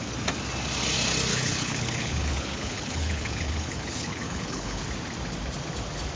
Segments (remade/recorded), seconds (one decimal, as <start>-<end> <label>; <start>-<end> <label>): 0.0-1.3 recorded; 1.3-4.8 remade; 4.8-6.2 recorded